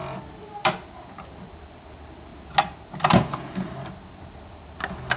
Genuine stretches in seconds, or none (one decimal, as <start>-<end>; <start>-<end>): 0.0-5.2